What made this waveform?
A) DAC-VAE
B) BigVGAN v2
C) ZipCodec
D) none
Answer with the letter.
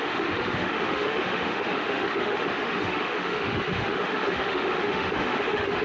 A